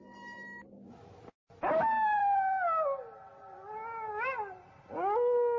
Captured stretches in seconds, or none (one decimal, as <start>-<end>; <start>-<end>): 0.0-5.6